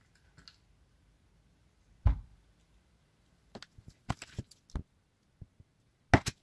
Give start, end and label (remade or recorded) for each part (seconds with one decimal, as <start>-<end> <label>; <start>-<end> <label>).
0.0-6.4 recorded